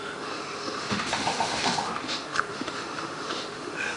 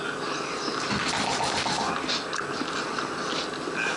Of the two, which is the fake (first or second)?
first